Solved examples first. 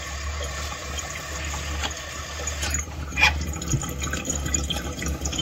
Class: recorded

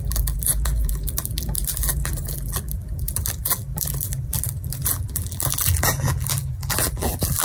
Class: remade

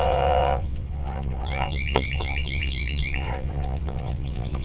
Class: remade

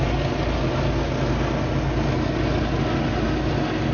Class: recorded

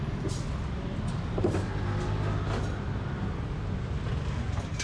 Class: recorded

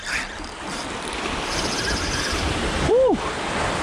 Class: remade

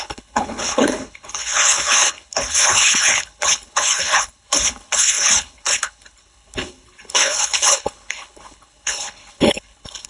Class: remade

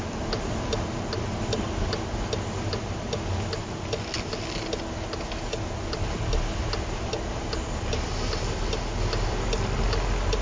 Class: recorded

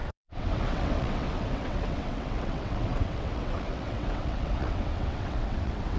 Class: remade